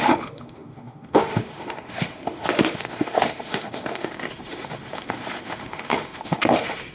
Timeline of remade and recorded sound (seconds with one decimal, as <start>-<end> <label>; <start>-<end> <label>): 0.0-6.9 remade

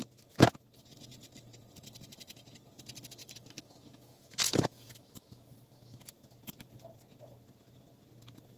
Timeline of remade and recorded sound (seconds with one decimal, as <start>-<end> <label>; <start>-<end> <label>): 0.0-3.2 recorded; 3.2-6.0 remade; 6.0-8.6 recorded

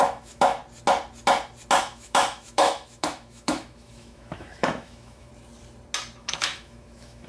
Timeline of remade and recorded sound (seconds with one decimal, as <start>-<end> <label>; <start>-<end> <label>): 0.0-0.6 remade; 0.6-1.8 recorded; 1.8-5.3 remade; 5.3-6.2 recorded; 6.2-7.3 remade

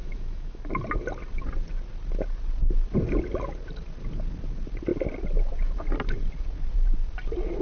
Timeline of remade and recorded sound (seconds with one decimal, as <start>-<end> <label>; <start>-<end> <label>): 0.0-0.6 remade; 0.6-7.6 recorded